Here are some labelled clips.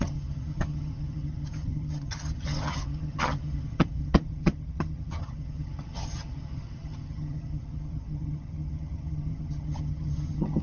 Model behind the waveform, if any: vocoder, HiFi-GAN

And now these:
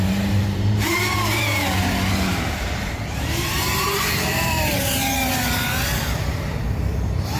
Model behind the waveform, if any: vocoder, BigVGAN v2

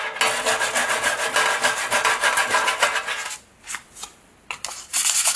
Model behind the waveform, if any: none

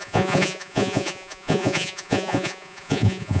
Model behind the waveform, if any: vocoder, Vocos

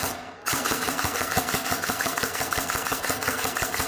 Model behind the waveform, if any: codec, SNAC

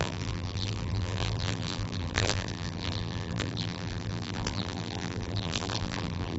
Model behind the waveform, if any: vocoder, BigVGAN v2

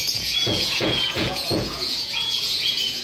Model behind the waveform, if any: vocoder, Vocos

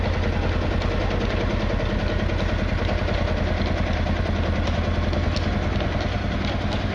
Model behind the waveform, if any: none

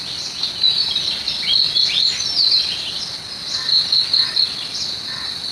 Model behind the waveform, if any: none